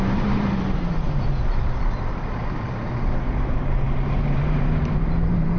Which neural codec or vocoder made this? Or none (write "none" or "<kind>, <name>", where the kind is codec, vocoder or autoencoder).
vocoder, BigVGAN v2